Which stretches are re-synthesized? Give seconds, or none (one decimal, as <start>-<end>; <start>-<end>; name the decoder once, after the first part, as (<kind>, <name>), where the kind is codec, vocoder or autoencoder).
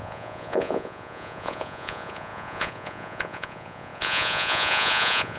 0.0-5.4 (vocoder, Vocos)